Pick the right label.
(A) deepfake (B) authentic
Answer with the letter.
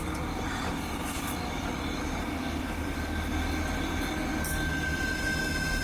B